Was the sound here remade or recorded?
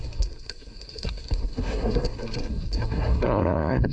remade